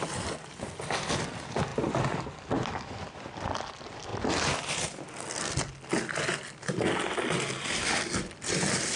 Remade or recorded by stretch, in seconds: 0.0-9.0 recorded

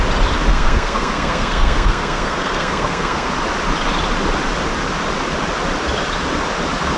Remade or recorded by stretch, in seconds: 0.0-0.5 recorded; 0.5-3.3 remade; 3.3-7.0 recorded

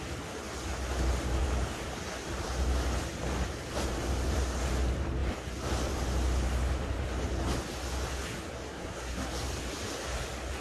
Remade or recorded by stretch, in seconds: 0.0-8.7 recorded; 8.7-9.3 remade; 9.3-10.6 recorded